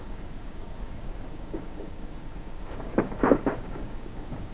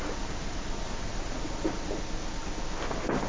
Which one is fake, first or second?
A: first